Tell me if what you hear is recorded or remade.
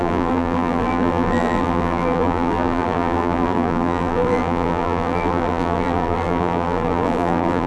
remade